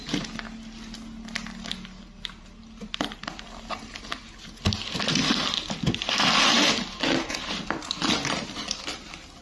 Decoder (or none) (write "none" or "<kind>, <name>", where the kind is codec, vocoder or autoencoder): none